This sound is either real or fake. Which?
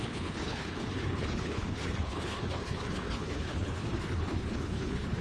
fake